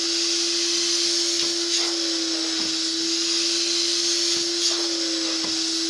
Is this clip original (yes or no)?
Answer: yes